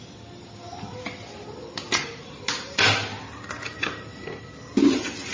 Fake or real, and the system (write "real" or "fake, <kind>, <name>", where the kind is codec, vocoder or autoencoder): real